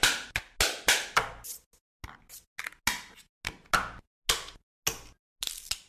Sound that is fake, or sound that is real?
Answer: real